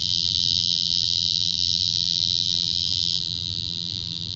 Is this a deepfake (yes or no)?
yes